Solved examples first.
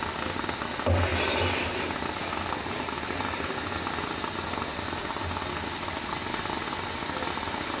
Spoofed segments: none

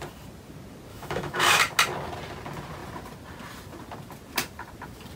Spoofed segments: 0.9-1.6 (autoencoder, DAC-VAE)